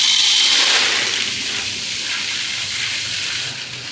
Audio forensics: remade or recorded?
recorded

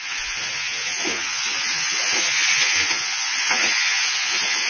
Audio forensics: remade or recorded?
remade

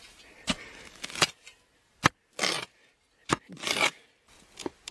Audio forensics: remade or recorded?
recorded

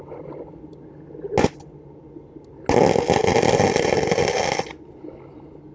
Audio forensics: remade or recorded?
recorded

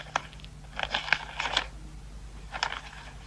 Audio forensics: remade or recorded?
recorded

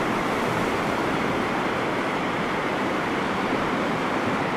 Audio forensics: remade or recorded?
remade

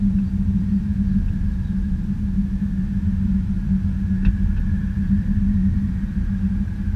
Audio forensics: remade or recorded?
recorded